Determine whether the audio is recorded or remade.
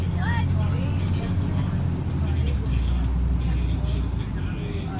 recorded